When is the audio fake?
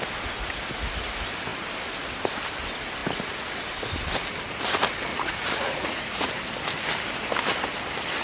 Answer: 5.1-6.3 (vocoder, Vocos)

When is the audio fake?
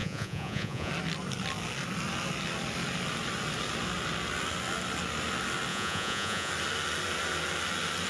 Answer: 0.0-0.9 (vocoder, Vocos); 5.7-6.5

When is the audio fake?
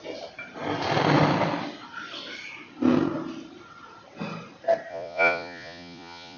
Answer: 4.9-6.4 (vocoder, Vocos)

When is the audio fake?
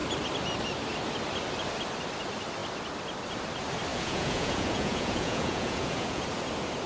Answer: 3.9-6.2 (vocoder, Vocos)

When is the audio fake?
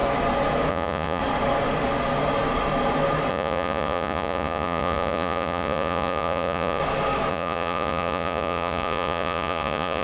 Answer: 0.7-1.2 (vocoder, Vocos); 3.3-6.8; 7.3-10.0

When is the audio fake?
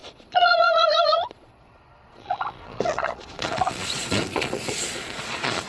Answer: 0.0-5.7 (vocoder, Vocos)